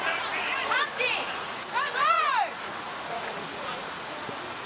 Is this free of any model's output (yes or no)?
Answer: no